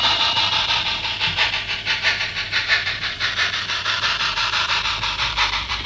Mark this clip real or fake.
fake